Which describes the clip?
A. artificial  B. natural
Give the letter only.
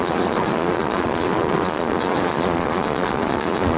A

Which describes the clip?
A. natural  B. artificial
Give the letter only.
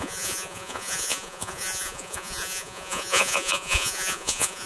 B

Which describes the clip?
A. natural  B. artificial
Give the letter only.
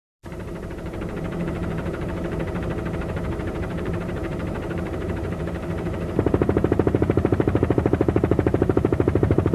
B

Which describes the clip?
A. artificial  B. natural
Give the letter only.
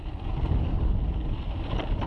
A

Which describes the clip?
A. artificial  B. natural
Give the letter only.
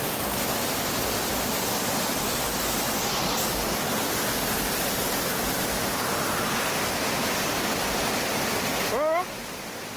B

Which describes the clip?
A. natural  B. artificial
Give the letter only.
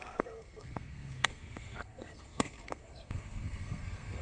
B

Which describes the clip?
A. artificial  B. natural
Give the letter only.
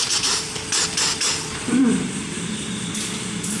A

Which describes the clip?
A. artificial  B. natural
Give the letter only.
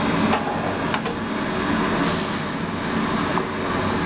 B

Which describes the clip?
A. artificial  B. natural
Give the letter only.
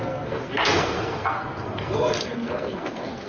A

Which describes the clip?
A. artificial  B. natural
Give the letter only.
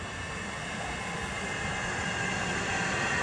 B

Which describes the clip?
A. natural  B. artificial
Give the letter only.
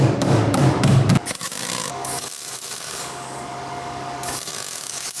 B